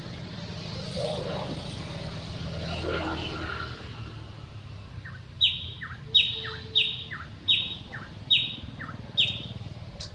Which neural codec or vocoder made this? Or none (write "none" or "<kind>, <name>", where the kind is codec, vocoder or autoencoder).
none